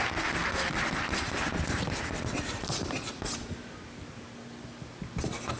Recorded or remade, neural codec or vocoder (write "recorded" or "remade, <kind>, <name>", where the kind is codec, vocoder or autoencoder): recorded